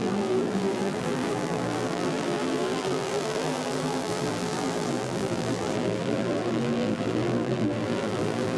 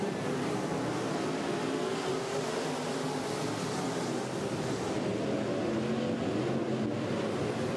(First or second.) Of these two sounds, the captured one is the second